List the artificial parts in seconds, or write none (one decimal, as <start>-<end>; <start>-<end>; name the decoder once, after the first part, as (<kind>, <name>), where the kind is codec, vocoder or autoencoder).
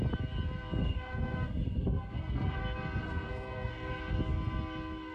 0.8-2.6 (codec, SNAC); 3.0-3.9